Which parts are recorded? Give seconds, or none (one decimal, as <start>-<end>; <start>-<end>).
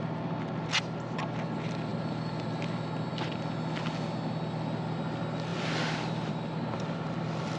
0.0-7.6